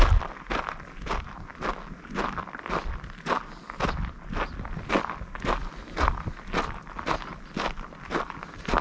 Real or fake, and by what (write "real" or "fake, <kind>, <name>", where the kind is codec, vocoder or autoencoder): real